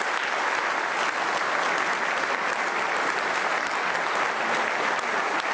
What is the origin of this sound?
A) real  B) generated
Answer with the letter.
A